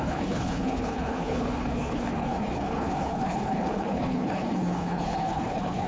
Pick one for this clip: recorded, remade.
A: remade